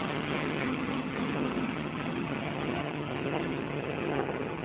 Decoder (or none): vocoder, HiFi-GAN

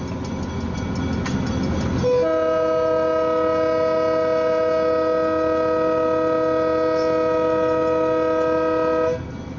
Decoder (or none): none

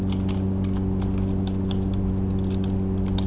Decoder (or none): none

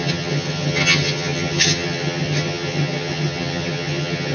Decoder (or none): vocoder, HiFi-GAN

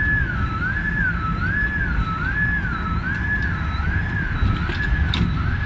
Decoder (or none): none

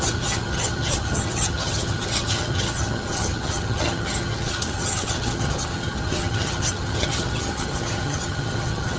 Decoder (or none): vocoder, HiFi-GAN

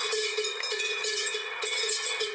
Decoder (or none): vocoder, HiFi-GAN